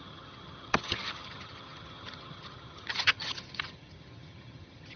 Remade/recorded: remade